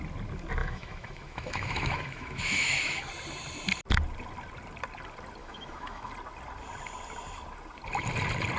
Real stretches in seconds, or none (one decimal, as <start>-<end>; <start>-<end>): 0.0-0.6; 3.1-5.4; 6.1-8.6